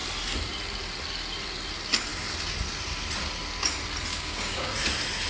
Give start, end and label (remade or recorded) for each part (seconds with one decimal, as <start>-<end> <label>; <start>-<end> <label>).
0.0-4.1 recorded; 4.1-4.7 remade; 4.7-5.3 recorded